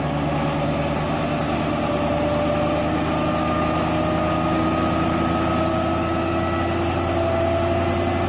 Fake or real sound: real